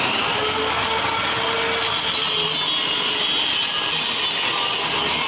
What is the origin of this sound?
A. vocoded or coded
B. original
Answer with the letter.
B